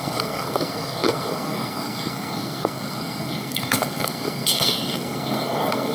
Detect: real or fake fake